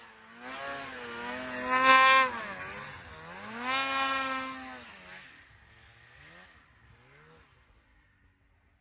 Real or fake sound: real